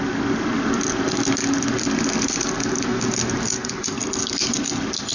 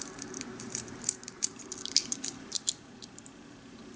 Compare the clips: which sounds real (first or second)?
first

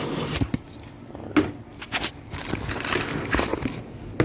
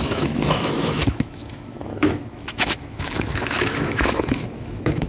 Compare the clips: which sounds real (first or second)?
first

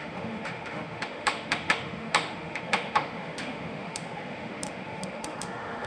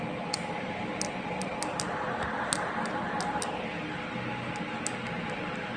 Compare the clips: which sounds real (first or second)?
second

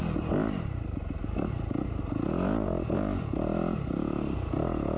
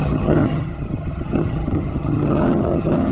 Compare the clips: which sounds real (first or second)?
first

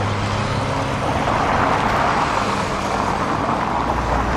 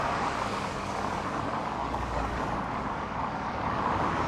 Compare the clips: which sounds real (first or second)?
first